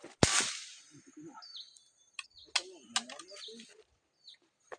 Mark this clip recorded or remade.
recorded